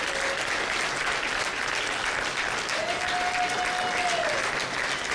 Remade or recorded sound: recorded